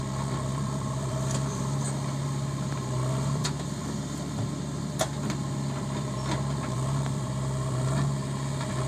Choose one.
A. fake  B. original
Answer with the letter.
A